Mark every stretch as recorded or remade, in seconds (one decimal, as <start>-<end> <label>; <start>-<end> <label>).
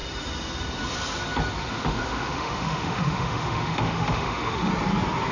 0.0-1.6 recorded; 1.6-4.7 remade; 4.7-5.3 recorded